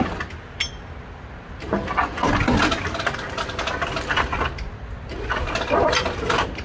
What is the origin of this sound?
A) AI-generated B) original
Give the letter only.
B